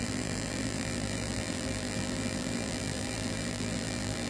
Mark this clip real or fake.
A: fake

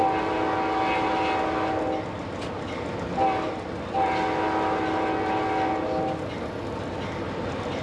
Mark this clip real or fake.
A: real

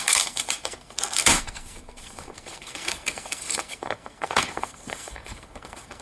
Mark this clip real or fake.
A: fake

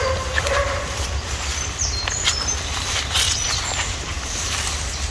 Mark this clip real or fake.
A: fake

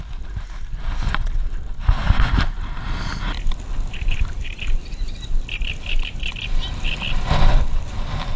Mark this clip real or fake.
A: real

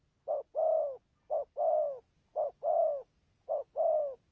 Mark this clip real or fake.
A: real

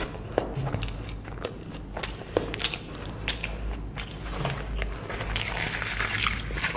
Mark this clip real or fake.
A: real